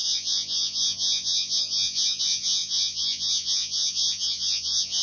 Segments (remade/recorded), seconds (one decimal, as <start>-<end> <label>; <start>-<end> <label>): 0.0-5.0 remade